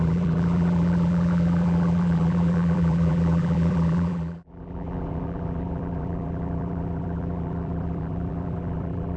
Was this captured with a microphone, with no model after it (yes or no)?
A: no